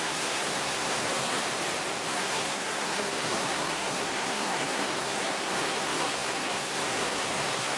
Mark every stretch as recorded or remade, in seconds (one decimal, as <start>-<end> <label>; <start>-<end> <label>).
0.0-1.4 remade; 1.4-2.1 recorded; 2.1-7.8 remade